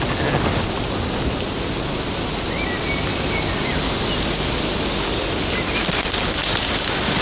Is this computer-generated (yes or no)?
no